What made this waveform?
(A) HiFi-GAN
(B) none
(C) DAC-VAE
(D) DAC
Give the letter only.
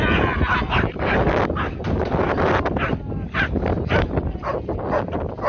B